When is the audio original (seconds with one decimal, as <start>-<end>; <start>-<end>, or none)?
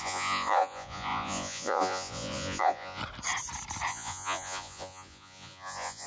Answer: 3.0-3.9